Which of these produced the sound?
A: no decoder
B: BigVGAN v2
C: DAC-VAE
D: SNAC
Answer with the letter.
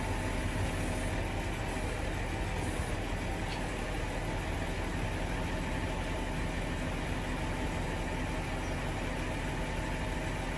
A